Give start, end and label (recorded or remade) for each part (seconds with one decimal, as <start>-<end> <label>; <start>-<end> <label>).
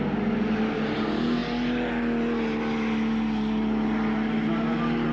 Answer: 0.0-5.1 recorded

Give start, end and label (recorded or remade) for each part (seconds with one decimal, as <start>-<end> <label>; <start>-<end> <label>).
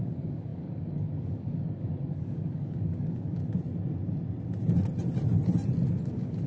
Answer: 0.0-3.4 remade; 3.4-6.0 recorded; 6.0-6.5 remade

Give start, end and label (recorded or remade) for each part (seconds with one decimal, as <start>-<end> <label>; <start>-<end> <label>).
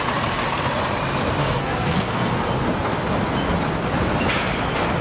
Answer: 0.0-1.4 recorded; 1.4-2.3 remade; 2.3-5.0 recorded